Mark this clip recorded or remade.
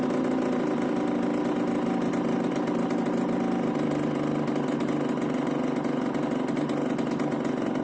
recorded